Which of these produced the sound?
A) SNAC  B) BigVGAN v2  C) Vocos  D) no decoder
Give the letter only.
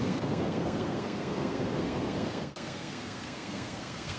A